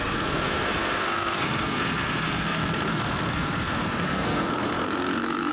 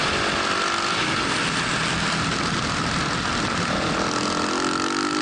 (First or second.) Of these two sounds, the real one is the second